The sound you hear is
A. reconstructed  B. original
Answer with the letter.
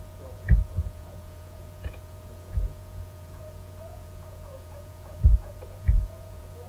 A